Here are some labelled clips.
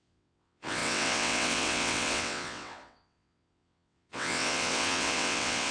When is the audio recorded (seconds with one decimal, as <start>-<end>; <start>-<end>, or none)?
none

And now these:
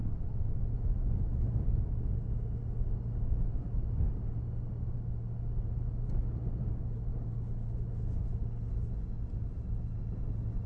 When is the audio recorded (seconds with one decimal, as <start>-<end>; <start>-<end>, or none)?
0.6-10.7

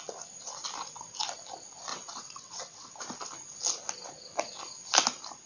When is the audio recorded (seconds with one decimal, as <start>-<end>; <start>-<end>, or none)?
0.0-1.9; 2.9-5.5

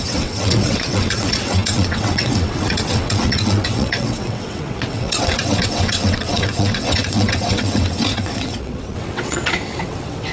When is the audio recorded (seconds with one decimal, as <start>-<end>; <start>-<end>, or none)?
none

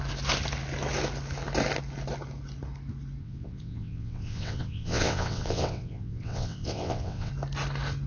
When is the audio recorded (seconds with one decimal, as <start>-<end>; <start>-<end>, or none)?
0.0-3.2; 7.3-8.1